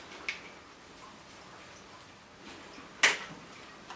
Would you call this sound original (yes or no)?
yes